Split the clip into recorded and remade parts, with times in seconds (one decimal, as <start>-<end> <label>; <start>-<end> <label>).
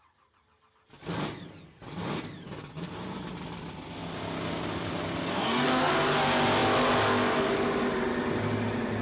0.0-5.3 recorded; 5.3-5.9 remade; 5.9-9.0 recorded